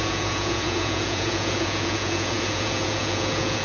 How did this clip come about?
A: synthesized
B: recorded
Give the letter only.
A